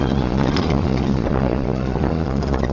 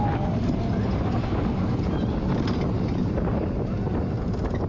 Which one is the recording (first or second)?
second